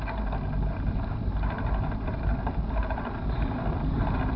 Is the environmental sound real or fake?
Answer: real